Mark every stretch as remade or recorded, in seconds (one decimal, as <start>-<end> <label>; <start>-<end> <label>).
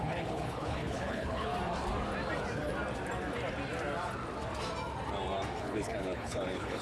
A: 0.0-1.5 remade; 1.5-5.6 recorded; 5.6-6.8 remade